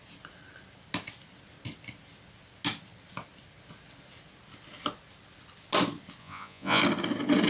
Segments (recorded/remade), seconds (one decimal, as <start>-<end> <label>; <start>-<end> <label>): 0.0-6.2 recorded; 6.2-6.8 remade; 6.8-7.5 recorded